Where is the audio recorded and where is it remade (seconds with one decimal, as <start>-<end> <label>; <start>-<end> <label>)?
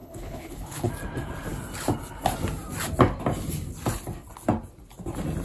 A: 0.0-0.9 remade; 0.9-5.4 recorded